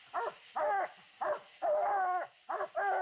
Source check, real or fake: real